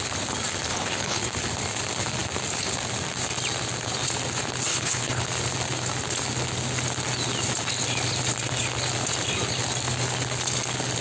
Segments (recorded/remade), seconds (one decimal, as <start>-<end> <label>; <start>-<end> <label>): 0.0-0.7 recorded; 0.7-1.2 remade; 1.2-4.7 recorded; 4.7-5.2 remade; 5.2-11.0 recorded